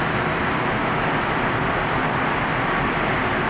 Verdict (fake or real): fake